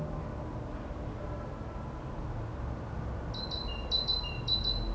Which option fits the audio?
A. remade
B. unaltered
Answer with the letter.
B